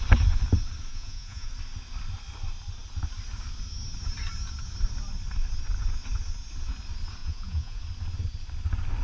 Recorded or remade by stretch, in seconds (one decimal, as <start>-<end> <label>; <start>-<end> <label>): 0.0-0.9 recorded; 0.9-1.5 remade; 1.5-7.2 recorded; 7.2-7.8 remade; 7.8-9.0 recorded